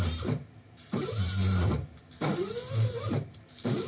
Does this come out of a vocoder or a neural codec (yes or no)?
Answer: yes